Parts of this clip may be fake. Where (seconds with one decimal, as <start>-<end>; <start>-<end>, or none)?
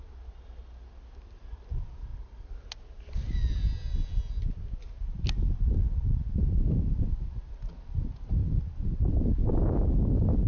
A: none